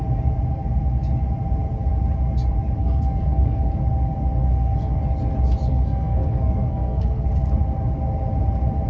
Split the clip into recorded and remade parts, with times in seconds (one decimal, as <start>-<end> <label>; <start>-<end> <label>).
0.0-2.8 recorded; 2.8-3.7 remade; 3.7-4.4 recorded; 4.4-5.0 remade; 5.0-5.7 recorded; 5.7-7.3 remade; 7.3-8.9 recorded